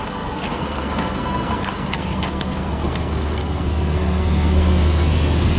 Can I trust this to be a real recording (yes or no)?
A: no